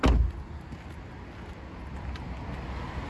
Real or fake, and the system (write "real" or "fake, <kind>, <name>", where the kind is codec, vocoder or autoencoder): real